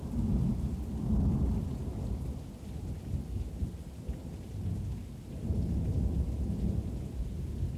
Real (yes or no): yes